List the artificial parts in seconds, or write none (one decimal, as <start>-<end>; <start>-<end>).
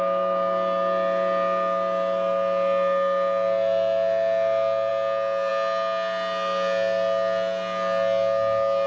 none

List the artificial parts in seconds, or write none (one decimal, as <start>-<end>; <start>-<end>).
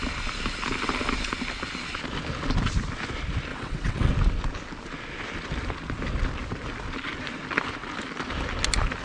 3.5-4.1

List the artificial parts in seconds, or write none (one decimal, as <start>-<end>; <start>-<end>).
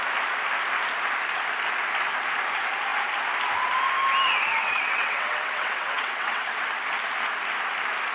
4.6-6.6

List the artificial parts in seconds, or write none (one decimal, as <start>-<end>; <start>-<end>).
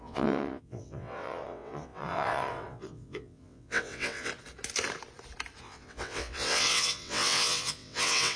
0.0-4.3; 5.6-8.4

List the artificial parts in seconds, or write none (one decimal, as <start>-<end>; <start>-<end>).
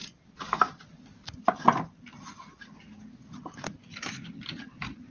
none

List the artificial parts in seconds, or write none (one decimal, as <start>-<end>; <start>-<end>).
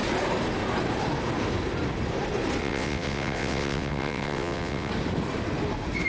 2.6-4.9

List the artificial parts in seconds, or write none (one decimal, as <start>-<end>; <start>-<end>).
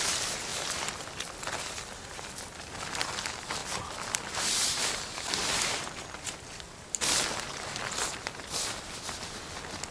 none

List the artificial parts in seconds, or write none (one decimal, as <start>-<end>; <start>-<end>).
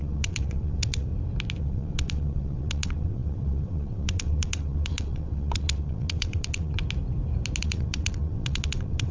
0.0-1.1; 1.6-6.8; 7.6-9.1